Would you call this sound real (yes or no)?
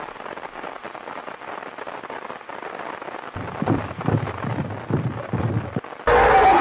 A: yes